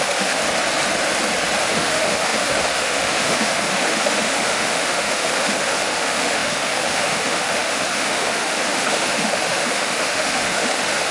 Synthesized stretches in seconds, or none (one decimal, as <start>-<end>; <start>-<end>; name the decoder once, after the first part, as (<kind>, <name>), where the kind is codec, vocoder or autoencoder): 0.0-0.4 (autoencoder, DAC-VAE); 1.6-11.1